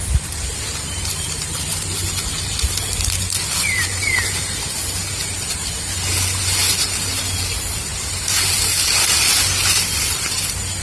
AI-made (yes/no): no